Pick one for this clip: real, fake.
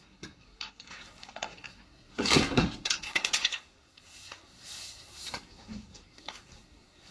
fake